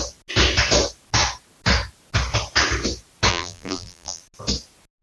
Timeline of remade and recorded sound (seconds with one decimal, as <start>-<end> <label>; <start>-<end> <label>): 0.0-3.3 recorded; 3.3-4.2 remade; 4.2-5.0 recorded